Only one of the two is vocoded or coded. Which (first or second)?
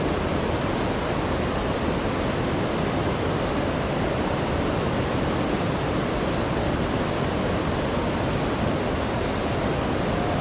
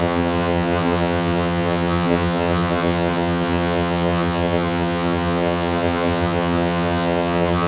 second